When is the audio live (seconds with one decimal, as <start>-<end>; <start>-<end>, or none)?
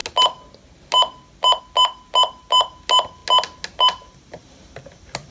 0.0-5.3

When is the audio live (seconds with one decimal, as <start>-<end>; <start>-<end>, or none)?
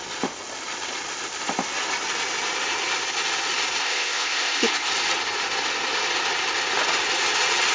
0.0-3.8; 4.9-7.7